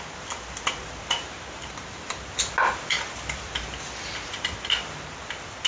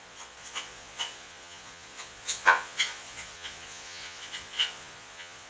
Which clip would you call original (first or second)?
first